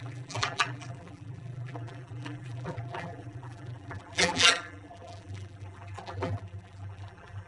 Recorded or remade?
remade